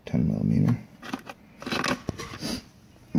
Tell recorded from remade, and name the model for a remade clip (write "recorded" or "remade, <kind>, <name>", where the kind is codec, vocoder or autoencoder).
recorded